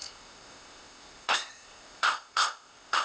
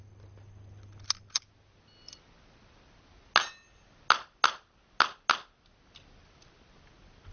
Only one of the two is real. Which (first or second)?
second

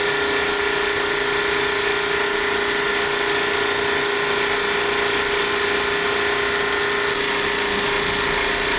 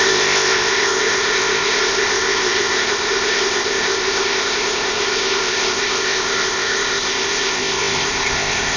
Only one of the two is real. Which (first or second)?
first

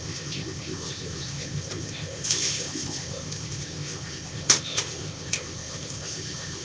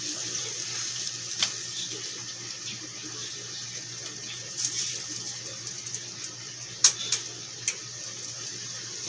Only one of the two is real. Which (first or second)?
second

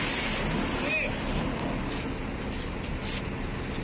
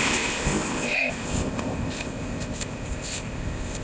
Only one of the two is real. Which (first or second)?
first